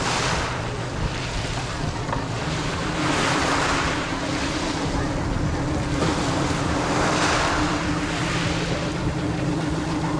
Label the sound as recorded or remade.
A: recorded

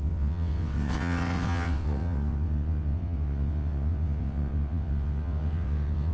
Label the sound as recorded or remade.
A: remade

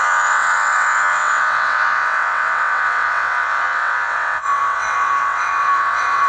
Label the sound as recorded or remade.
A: remade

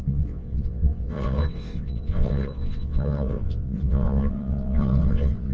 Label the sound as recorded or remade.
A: remade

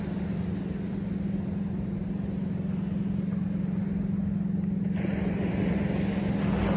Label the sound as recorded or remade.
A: recorded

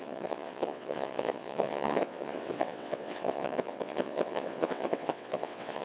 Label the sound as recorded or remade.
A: remade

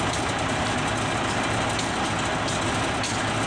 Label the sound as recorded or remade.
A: recorded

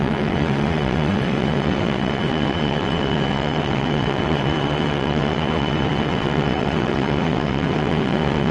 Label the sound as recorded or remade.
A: remade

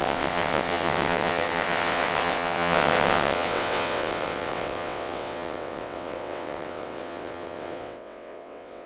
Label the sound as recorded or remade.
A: remade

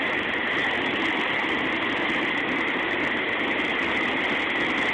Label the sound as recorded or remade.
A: recorded